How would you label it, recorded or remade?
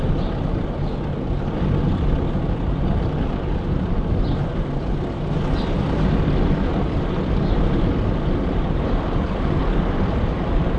remade